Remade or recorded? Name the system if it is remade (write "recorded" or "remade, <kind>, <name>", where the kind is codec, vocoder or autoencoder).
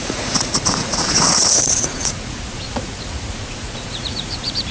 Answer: remade, vocoder, Vocos